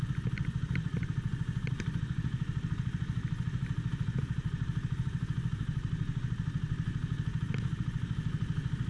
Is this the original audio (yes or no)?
yes